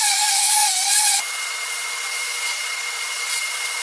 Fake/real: fake